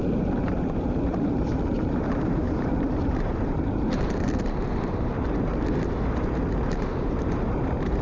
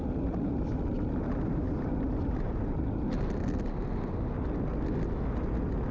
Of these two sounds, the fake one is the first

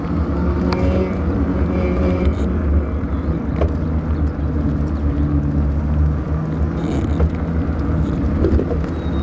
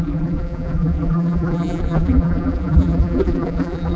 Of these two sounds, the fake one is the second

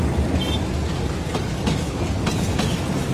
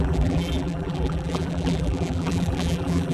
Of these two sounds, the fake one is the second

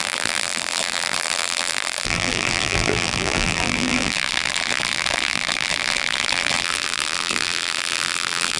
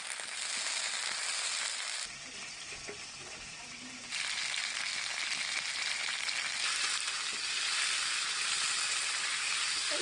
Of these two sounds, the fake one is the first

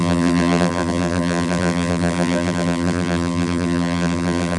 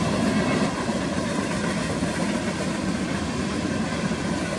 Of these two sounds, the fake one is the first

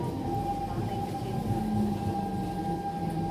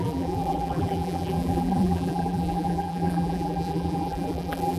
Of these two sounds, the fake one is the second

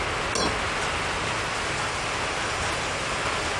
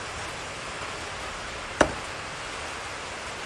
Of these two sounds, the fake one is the second